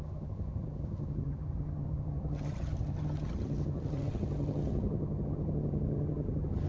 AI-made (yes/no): yes